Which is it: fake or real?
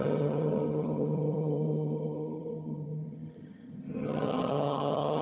fake